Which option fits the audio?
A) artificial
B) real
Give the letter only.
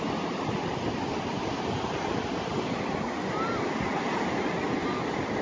B